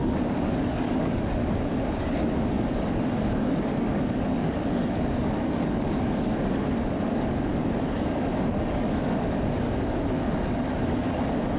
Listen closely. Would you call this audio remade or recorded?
remade